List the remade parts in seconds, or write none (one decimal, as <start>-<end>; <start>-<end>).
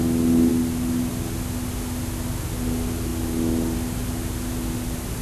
none